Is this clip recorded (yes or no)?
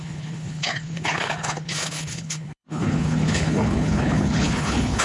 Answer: no